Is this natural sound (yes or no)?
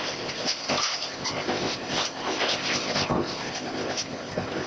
no